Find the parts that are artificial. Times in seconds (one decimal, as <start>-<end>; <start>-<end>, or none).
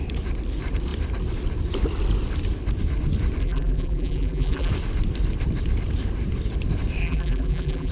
3.4-4.7; 7.0-7.9